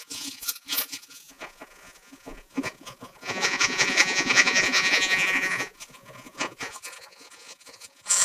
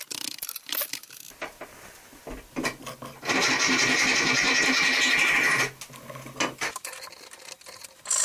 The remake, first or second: first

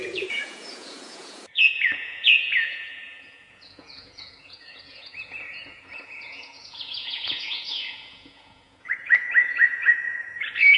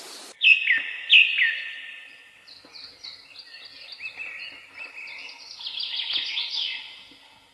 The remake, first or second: first